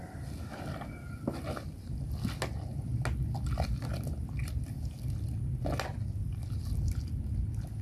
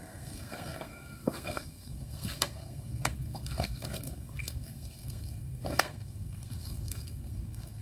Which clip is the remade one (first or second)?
second